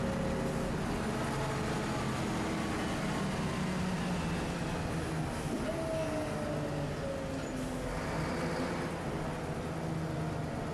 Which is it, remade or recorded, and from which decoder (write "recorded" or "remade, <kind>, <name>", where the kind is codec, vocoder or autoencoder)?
recorded